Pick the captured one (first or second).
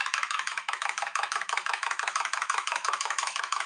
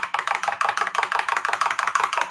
second